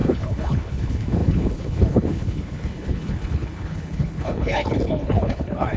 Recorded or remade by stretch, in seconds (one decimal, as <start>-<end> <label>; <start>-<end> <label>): 0.0-5.8 remade